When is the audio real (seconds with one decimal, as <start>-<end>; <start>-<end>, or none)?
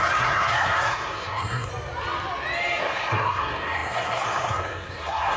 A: 1.7-2.8